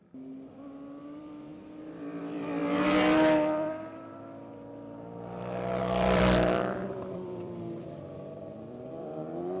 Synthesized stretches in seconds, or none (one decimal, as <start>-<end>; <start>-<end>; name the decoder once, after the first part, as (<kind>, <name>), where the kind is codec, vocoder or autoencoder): 1.0-1.5 (vocoder, BigVGAN v2); 2.2-2.6; 5.8-9.6